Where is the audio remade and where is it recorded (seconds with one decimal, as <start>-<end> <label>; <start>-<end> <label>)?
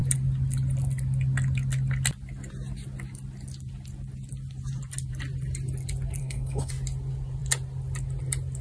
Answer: 0.0-6.2 recorded; 6.2-6.7 remade; 6.7-8.6 recorded